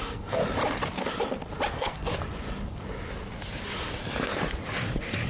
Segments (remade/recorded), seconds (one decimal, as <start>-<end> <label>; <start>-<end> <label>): 0.0-0.4 remade; 0.4-1.7 recorded; 1.7-2.1 remade; 2.1-5.3 recorded